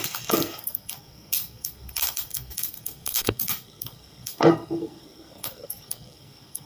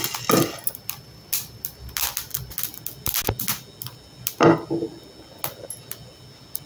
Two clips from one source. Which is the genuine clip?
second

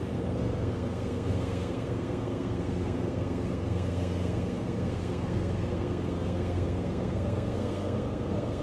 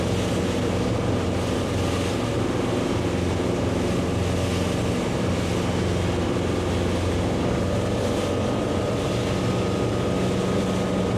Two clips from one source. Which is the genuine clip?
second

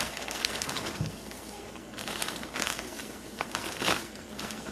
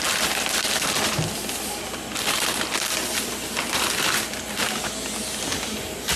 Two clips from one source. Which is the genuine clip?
second